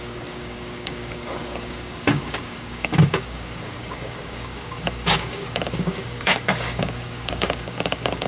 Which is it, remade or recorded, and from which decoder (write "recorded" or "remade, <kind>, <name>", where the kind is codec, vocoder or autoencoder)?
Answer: remade, codec, DAC